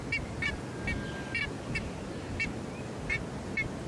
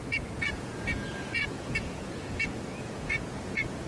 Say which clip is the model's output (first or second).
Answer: second